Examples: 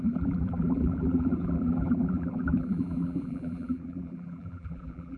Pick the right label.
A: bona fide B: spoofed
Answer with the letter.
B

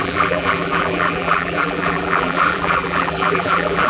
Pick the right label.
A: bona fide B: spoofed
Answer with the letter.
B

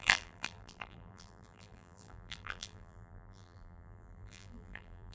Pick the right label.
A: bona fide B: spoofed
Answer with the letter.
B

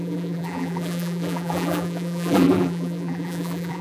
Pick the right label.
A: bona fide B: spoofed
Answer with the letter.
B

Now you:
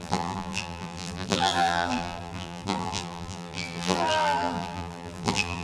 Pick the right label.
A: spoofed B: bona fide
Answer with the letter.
A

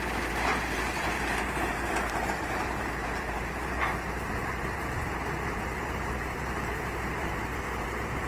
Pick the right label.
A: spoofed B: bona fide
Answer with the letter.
A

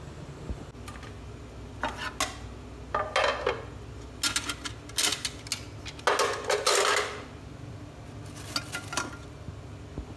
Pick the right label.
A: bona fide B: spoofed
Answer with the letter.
A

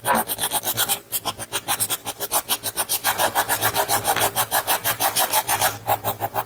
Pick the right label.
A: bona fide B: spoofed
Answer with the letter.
A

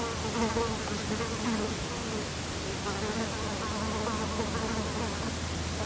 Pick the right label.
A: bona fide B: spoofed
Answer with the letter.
A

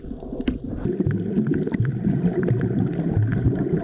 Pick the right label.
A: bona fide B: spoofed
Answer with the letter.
A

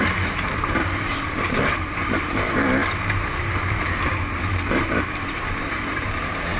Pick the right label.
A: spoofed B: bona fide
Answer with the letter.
A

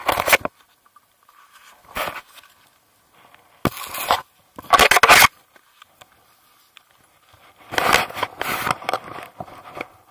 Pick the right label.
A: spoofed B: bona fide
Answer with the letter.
B